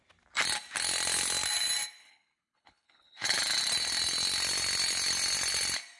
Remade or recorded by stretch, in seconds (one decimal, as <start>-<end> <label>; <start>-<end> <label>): 0.0-2.0 recorded; 2.0-3.4 remade; 3.4-6.0 recorded